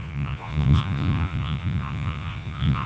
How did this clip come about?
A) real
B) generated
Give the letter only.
B